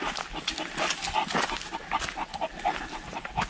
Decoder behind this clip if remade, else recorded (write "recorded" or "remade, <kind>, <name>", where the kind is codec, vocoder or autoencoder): recorded